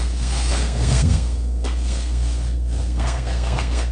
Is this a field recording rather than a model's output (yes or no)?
no